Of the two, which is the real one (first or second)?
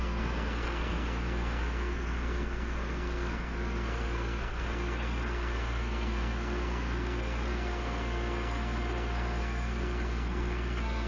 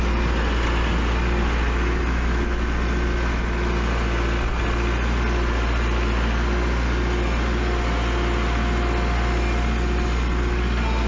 second